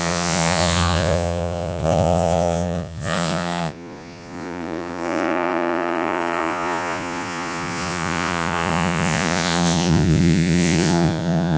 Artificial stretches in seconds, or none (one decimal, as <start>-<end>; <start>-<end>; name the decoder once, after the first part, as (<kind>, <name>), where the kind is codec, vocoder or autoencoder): 0.0-11.6 (vocoder, Vocos)